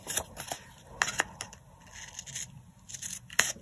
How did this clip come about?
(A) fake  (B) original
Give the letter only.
B